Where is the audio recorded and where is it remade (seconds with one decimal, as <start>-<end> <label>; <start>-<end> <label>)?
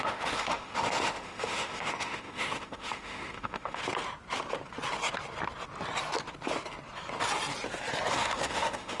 0.0-3.8 remade; 3.8-8.1 recorded; 8.1-9.0 remade